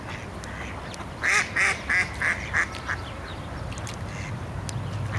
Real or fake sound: real